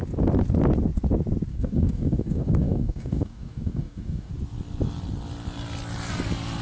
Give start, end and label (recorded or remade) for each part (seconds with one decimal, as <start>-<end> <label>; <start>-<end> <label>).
0.0-1.5 recorded; 1.5-4.3 remade; 4.3-6.6 recorded